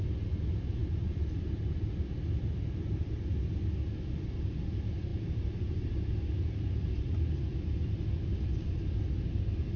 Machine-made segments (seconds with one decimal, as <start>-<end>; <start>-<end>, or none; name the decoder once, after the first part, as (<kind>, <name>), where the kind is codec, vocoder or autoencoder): none